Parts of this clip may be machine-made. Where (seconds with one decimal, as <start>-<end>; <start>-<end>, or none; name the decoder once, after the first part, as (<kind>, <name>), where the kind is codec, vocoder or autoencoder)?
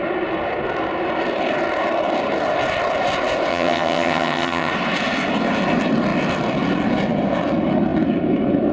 3.5-4.7 (vocoder, HiFi-GAN)